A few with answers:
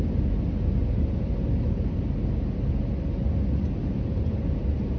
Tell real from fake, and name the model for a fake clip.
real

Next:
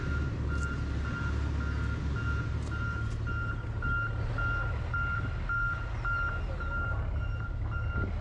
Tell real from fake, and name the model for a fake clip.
real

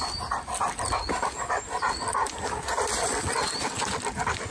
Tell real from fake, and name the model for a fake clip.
real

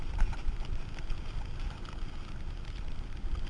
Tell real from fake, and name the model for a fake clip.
real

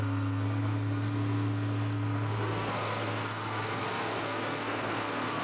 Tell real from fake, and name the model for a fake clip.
fake, codec, SNAC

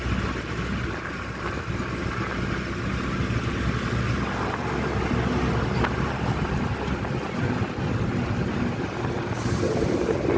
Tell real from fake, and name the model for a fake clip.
real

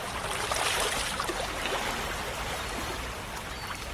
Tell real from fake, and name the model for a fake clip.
real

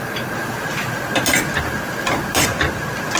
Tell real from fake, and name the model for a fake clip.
real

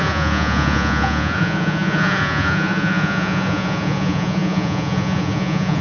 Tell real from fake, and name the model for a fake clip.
fake, vocoder, Vocos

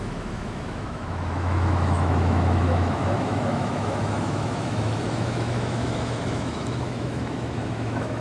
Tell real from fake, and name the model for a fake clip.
fake, autoencoder, DAC-VAE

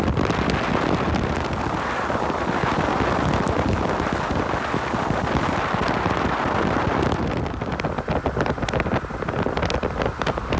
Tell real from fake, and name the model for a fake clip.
real